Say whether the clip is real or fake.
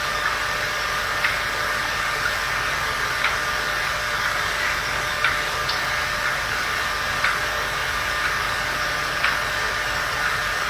fake